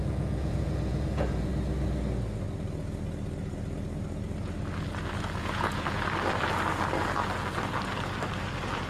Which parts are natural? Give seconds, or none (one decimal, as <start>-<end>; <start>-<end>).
1.5-5.4; 6.0-8.9